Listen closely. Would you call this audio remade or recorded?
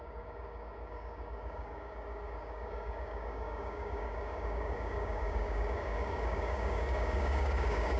remade